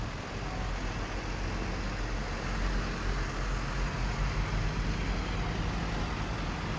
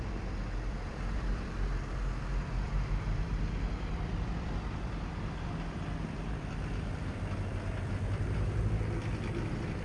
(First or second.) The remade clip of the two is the second